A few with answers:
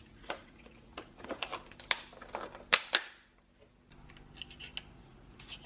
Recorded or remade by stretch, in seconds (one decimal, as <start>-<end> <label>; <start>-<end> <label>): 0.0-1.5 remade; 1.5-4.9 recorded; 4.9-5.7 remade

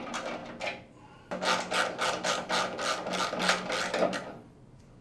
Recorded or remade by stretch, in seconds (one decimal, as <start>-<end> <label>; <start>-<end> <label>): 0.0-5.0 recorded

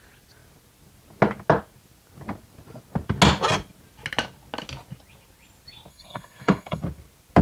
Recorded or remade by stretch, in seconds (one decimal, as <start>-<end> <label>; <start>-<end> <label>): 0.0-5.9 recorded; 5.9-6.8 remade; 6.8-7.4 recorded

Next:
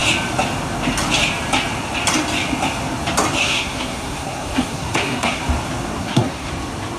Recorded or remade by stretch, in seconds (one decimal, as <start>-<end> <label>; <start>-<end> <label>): 0.0-3.4 recorded; 3.4-5.4 remade; 5.4-6.0 recorded; 6.0-6.5 remade; 6.5-7.0 recorded

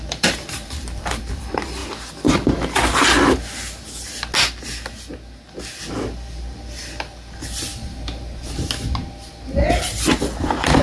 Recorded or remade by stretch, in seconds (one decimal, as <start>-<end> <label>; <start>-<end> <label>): 0.0-1.8 remade; 1.8-5.9 recorded; 5.9-7.7 remade; 7.7-9.9 recorded; 9.9-10.8 remade